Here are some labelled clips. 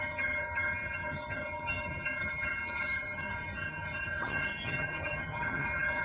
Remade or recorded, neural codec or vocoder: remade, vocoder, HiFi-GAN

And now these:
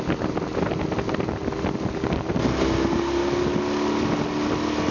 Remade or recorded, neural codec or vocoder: recorded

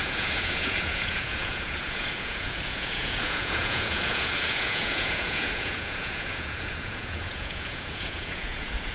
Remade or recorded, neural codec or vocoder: remade, vocoder, Vocos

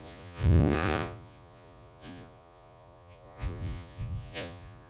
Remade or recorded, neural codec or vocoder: remade, vocoder, Vocos